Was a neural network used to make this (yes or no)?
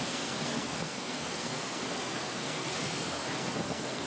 yes